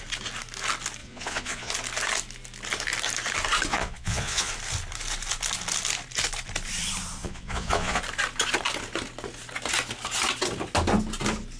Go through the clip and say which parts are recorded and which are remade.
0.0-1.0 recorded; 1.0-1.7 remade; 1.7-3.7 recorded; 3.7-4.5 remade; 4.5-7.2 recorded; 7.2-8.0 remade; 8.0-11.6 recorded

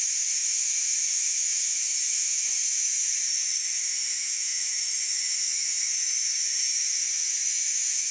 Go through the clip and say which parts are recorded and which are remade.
0.0-8.1 remade

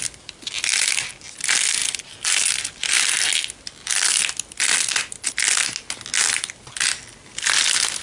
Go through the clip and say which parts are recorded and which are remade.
0.0-8.0 recorded